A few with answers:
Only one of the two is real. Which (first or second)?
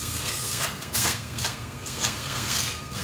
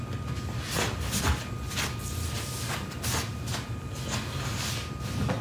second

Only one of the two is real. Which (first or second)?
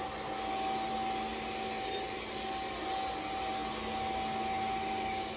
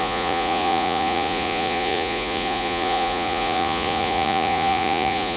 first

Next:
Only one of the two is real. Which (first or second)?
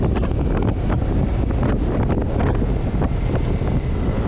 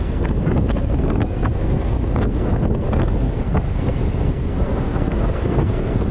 first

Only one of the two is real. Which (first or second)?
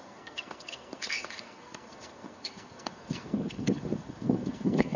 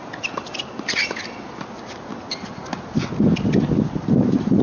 second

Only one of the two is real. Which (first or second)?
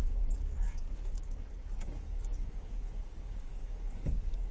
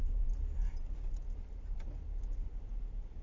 second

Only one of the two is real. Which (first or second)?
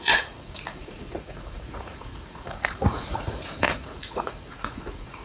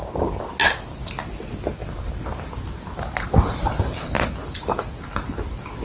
second